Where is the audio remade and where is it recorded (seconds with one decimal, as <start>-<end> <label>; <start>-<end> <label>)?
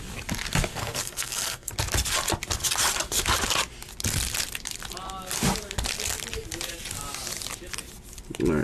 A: 0.0-0.7 recorded; 0.7-1.7 remade; 1.7-8.6 recorded